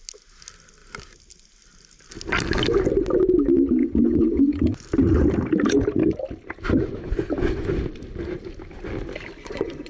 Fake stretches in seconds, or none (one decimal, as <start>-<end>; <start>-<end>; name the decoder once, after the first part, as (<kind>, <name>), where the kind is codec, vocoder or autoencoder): 3.8-4.4 (vocoder, Vocos); 9.4-9.9